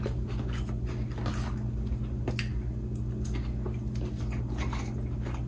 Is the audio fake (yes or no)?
no